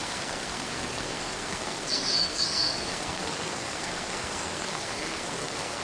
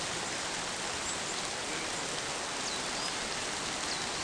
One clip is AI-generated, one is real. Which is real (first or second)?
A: second